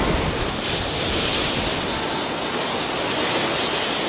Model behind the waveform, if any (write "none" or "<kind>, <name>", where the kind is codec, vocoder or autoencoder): none